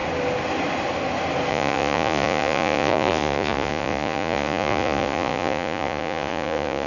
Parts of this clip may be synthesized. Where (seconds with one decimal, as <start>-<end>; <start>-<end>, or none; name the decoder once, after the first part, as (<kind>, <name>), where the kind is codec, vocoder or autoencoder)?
1.5-6.9 (vocoder, Vocos)